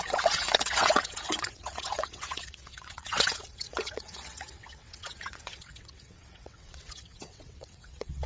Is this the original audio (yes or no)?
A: no